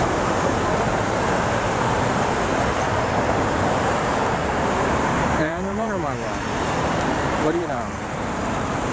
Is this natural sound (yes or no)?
no